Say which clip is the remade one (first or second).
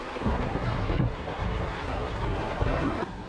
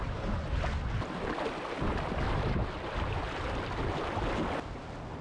first